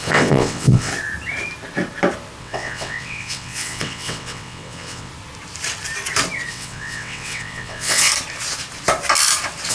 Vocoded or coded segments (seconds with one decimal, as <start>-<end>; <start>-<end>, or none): 0.0-0.9; 2.4-5.1; 6.5-8.1